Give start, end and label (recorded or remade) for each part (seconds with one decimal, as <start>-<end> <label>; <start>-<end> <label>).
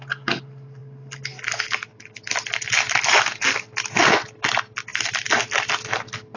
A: 0.0-6.4 recorded